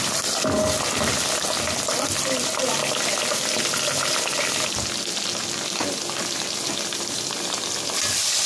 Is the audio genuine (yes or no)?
yes